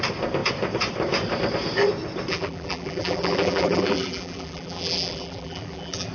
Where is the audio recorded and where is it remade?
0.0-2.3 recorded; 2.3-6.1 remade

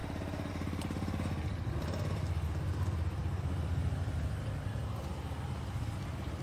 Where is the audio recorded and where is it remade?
0.0-6.4 recorded

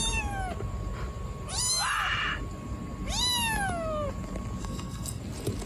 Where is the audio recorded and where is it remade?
0.0-4.6 recorded; 4.6-5.2 remade; 5.2-5.7 recorded

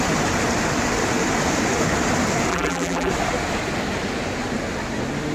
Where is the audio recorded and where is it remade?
0.0-2.5 recorded; 2.5-3.1 remade; 3.1-5.3 recorded

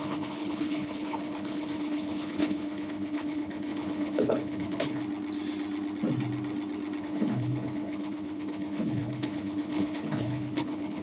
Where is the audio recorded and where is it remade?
0.0-5.0 remade; 5.0-7.0 recorded; 7.0-11.0 remade

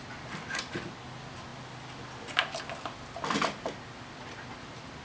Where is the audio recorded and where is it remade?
0.0-5.0 recorded

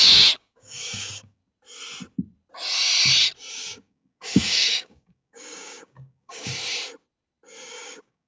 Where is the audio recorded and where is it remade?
0.0-1.4 remade; 1.4-3.5 recorded; 3.5-6.5 remade; 6.5-7.7 recorded; 7.7-8.3 remade

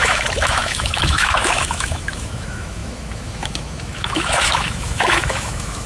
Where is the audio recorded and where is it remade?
0.0-5.9 remade